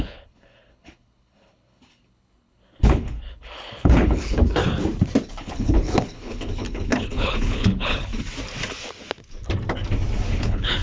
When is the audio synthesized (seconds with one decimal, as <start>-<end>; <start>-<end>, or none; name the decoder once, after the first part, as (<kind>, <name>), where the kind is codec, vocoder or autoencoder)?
0.0-4.6 (codec, HILCodec); 5.3-8.1; 10.3-10.8